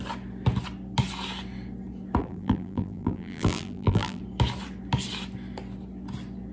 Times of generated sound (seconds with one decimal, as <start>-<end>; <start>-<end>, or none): 2.2-4.2